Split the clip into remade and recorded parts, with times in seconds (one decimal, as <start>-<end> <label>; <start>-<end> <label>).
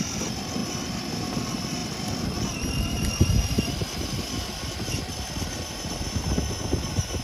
0.0-7.2 recorded